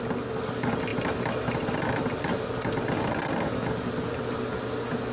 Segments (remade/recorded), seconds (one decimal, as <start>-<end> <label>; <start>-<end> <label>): 0.0-5.1 recorded